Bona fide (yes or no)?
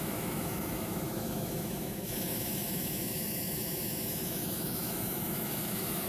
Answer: no